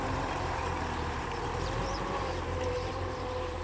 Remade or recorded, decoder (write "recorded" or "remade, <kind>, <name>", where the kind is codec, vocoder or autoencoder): remade, vocoder, BigVGAN v2